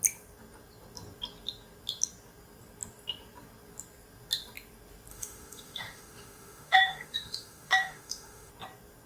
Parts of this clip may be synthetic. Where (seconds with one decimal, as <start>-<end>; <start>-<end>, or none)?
5.1-8.5